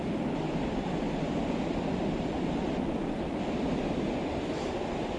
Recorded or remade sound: recorded